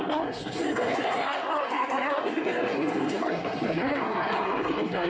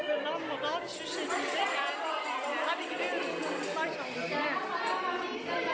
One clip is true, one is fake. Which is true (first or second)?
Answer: second